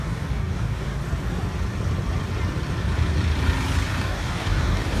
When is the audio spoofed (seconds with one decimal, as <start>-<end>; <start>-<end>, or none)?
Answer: 0.0-1.0; 3.9-5.0